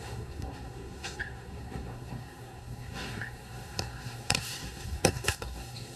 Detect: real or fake fake